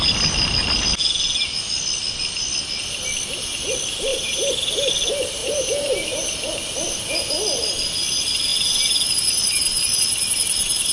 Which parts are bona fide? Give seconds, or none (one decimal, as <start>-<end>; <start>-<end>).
0.0-4.1; 4.9-5.4; 6.3-10.9